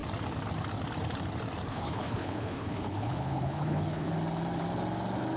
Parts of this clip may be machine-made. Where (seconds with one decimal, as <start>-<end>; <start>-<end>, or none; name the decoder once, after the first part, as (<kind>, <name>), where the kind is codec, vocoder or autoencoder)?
1.7-4.1 (codec, HILCodec)